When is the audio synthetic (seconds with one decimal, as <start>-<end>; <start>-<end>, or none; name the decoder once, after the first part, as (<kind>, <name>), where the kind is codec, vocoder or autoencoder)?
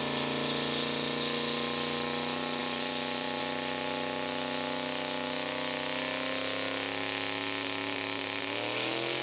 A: 2.6-3.4 (vocoder, BigVGAN v2)